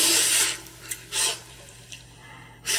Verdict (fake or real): fake